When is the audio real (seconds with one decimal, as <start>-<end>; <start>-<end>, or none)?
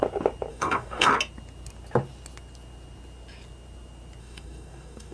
0.0-0.5; 1.1-4.2